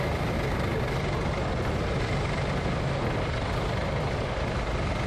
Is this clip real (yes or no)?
no